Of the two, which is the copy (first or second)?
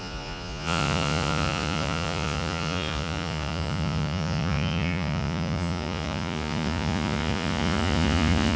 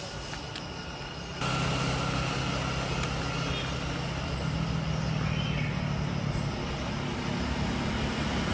first